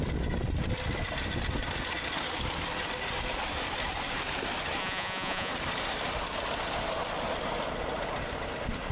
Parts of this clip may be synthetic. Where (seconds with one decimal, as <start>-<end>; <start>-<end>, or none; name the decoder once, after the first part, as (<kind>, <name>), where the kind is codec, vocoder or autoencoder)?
4.8-5.5 (vocoder, Vocos)